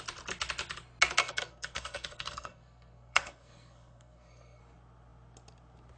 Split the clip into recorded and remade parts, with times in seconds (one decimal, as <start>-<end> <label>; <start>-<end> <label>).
0.0-1.2 recorded; 1.2-4.6 remade; 4.6-6.0 recorded